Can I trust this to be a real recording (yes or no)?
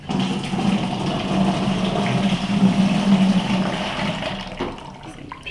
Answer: yes